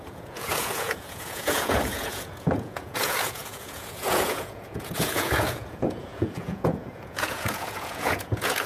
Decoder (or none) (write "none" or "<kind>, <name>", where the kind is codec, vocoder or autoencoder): vocoder, Vocos